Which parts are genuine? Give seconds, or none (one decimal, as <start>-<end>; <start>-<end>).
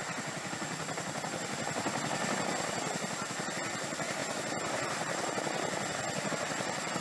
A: 0.0-3.0